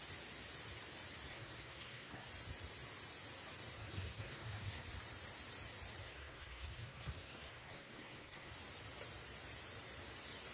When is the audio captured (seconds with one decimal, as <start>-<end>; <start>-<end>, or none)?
0.0-1.3; 2.3-3.8; 4.8-6.0; 8.5-10.5

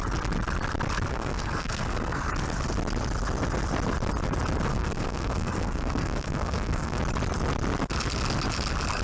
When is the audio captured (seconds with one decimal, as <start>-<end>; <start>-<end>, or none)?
0.0-1.1; 2.3-4.7; 7.0-9.0